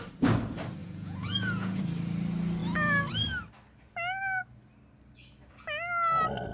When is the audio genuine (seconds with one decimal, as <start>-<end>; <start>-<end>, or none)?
0.0-0.8; 1.8-6.5